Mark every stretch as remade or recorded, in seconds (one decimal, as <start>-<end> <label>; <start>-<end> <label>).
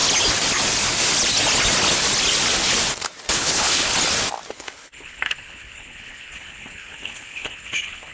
0.0-3.3 recorded; 3.3-3.9 remade; 3.9-4.5 recorded; 4.5-8.1 remade